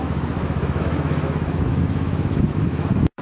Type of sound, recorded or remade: remade